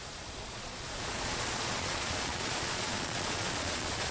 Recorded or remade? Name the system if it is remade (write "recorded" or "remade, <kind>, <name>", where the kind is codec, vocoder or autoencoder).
remade, vocoder, Vocos